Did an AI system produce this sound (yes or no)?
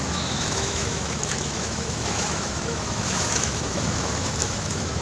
yes